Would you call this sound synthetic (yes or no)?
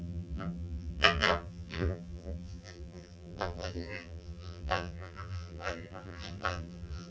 yes